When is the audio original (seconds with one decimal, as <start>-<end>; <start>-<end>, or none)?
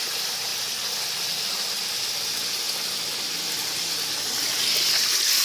0.0-5.4